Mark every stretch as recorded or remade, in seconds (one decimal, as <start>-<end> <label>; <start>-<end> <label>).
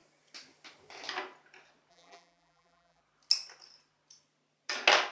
0.0-1.9 recorded; 1.9-3.0 remade; 3.0-5.1 recorded